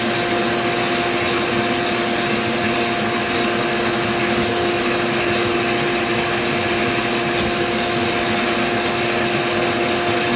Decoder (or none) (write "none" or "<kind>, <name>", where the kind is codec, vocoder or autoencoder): none